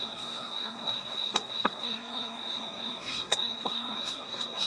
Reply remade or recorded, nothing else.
remade